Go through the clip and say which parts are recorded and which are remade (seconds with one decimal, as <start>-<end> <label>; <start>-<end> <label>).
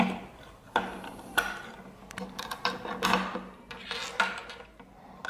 0.0-5.3 recorded